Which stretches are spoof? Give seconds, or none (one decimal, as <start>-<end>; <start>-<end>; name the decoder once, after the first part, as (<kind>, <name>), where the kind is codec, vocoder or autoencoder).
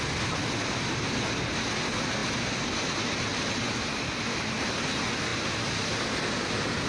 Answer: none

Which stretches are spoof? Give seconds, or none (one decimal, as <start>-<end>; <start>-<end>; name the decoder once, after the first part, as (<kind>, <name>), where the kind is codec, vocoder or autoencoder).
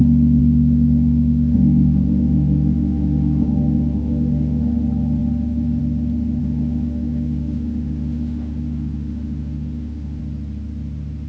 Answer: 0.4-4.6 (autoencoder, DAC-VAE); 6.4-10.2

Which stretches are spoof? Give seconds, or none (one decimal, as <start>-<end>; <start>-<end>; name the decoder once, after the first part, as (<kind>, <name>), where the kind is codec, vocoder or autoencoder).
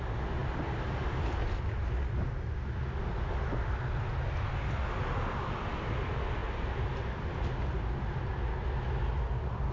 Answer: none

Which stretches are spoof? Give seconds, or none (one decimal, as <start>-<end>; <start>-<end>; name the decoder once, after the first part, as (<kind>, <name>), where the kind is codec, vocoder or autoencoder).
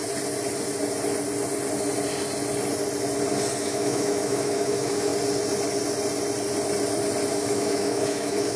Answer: 3.6-5.1 (autoencoder, DAC-VAE); 7.3-8.6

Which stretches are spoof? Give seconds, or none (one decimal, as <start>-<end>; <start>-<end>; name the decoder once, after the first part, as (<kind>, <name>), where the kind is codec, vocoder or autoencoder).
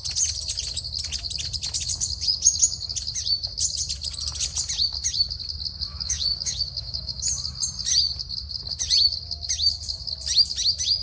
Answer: 5.9-7.2 (autoencoder, DAC-VAE)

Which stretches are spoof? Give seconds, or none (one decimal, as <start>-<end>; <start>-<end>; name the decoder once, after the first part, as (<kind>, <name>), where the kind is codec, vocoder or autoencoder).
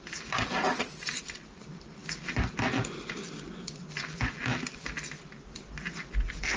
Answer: none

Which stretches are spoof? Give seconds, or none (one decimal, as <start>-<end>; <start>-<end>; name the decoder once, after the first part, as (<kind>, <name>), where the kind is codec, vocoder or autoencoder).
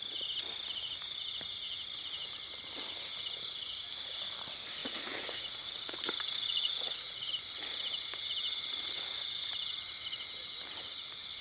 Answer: 4.8-7.3 (vocoder, Vocos)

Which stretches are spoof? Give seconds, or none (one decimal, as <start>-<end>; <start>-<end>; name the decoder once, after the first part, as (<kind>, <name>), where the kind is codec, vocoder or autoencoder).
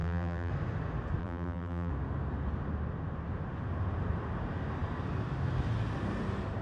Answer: 0.0-0.5 (vocoder, BigVGAN v2); 1.2-1.9